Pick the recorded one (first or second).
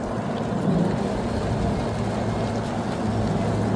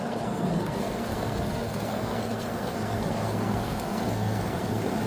first